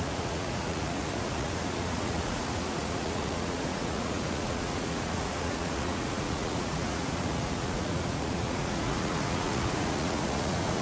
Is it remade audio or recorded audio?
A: remade